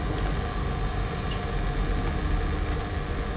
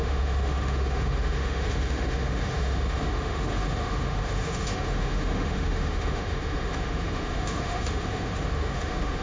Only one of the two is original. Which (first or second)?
first